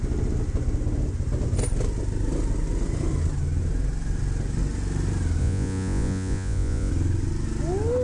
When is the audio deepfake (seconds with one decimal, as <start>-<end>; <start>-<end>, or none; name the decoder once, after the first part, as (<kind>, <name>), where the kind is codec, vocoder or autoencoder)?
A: 5.4-6.9 (vocoder, Vocos)